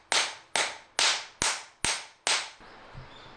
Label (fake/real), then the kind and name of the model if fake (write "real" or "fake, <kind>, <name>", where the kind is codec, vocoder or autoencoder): real